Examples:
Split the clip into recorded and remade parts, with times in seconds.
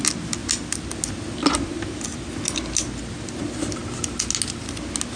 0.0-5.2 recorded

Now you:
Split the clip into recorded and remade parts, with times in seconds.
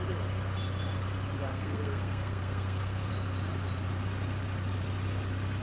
0.0-1.5 recorded; 1.5-3.1 remade; 3.1-5.6 recorded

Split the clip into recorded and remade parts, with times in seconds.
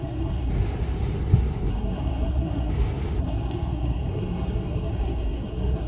0.0-0.5 remade; 0.5-1.7 recorded; 1.7-2.7 remade; 2.7-3.2 recorded; 3.2-5.9 remade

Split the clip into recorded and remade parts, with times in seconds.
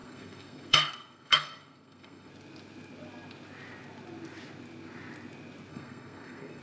0.0-2.3 remade; 2.3-5.7 recorded; 5.7-6.6 remade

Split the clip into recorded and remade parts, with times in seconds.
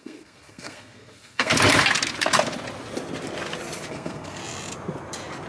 0.0-1.5 remade; 1.5-3.9 recorded; 3.9-4.4 remade; 4.4-5.5 recorded